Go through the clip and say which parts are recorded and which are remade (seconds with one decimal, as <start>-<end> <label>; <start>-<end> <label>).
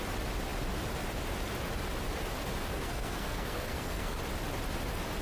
0.0-2.7 recorded; 2.7-4.2 remade; 4.2-5.2 recorded